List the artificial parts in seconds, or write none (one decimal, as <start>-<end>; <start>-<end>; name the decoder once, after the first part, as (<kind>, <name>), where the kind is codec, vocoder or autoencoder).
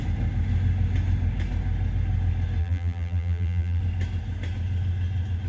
2.6-3.8 (vocoder, BigVGAN v2)